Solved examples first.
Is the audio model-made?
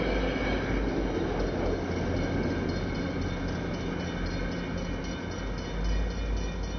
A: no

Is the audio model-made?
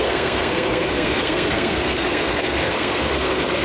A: yes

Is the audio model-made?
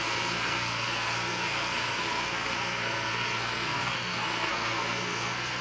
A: yes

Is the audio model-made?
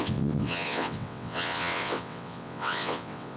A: yes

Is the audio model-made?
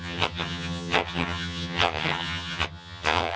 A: yes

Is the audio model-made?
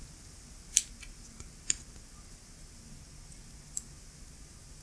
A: no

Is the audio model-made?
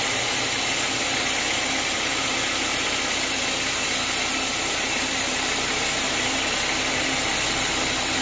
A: no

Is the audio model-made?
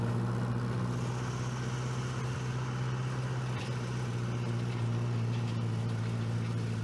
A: no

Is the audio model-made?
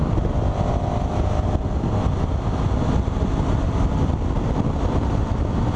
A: no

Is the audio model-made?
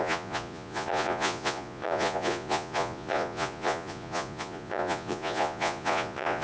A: yes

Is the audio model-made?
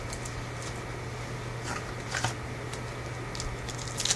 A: no